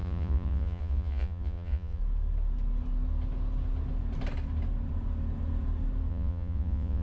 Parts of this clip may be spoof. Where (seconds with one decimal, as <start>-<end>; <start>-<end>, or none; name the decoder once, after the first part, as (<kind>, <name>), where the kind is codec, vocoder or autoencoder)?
0.0-2.0 (vocoder, Vocos); 6.1-7.0